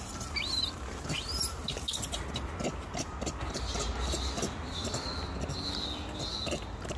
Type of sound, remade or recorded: recorded